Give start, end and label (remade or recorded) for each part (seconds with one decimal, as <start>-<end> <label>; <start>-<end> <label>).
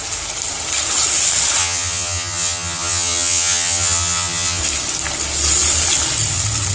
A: 0.0-1.6 recorded; 1.6-4.6 remade; 4.6-6.7 recorded